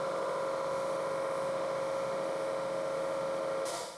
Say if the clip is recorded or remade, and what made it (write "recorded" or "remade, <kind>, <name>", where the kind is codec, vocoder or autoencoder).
remade, autoencoder, DAC-VAE